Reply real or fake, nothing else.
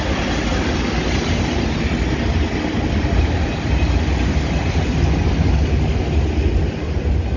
real